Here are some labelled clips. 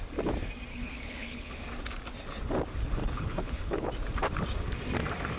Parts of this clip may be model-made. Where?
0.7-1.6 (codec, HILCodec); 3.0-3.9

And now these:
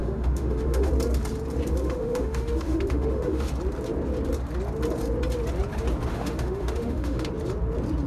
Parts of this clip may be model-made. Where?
0.0-0.9 (autoencoder, DAC-VAE); 1.8-3.5; 6.1-7.3

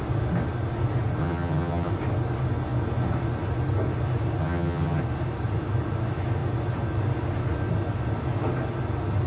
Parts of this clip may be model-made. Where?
1.2-1.9 (vocoder, HiFi-GAN); 4.4-5.0

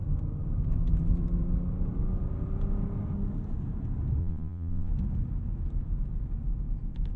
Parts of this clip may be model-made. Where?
4.2-4.9 (vocoder, Vocos)

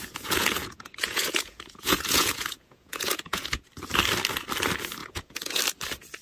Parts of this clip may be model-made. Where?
0.0-3.7 (vocoder, Vocos); 5.0-5.6